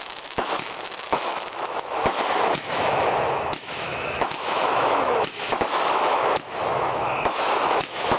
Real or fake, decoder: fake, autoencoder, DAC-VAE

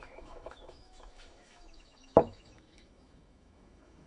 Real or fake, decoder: fake, autoencoder, DAC-VAE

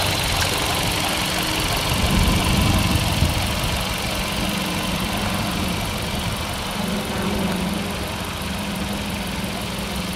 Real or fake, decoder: real